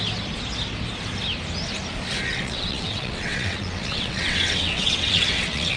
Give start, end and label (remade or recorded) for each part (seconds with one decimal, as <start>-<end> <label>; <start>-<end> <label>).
0.0-2.3 recorded; 2.3-5.8 remade